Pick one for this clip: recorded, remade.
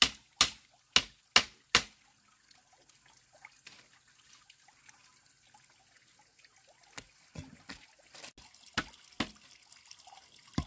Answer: recorded